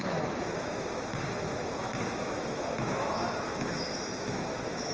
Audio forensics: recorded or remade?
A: remade